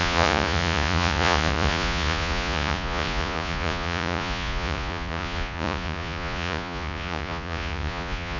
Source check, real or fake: fake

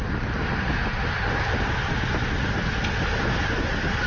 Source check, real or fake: real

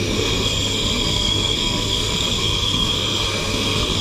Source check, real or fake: fake